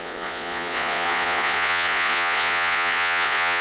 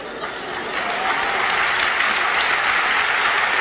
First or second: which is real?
second